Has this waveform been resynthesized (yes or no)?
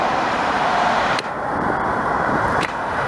yes